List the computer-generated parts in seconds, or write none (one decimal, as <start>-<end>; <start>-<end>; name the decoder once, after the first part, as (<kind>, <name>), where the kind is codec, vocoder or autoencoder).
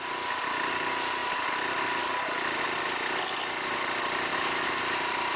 4.3-4.8 (autoencoder, DAC-VAE)